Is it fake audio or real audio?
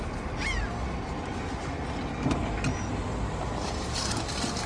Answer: real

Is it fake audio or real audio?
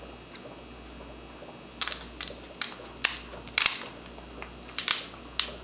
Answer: real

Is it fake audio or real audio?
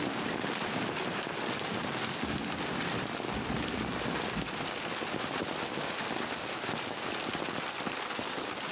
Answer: real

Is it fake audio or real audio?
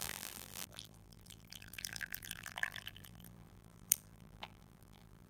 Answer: fake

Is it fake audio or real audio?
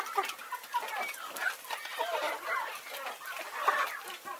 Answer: real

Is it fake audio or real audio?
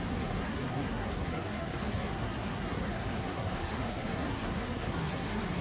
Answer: fake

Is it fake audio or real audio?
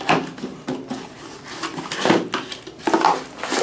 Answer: real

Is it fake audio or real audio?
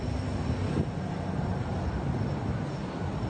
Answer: real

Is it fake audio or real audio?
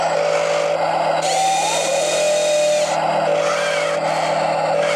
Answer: real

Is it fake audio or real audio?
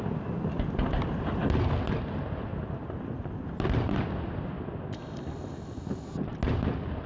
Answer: real